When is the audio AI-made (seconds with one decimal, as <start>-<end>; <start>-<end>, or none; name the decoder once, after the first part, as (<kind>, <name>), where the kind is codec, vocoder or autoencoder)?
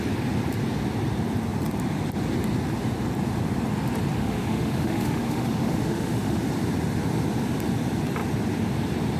4.2-6.4 (autoencoder, DAC-VAE)